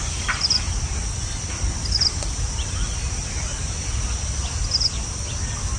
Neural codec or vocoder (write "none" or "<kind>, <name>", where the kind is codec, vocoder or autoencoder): none